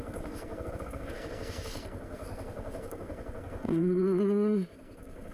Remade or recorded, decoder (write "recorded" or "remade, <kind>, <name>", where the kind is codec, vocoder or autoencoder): remade, codec, SNAC